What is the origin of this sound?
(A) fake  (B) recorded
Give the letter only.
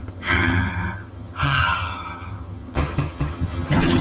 A